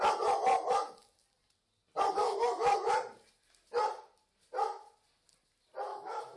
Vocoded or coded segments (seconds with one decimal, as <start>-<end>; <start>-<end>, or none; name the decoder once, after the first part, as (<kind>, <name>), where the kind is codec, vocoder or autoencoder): 2.2-2.9 (autoencoder, DAC-VAE); 5.9-6.4